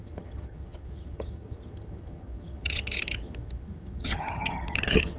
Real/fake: fake